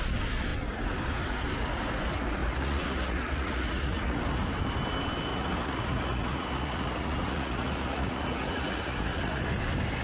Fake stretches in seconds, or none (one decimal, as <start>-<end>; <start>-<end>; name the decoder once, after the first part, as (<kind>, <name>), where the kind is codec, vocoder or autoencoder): 2.4-4.2 (vocoder, Vocos); 5.3-9.4